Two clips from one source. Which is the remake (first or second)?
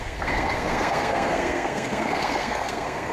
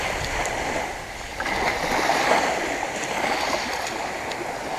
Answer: first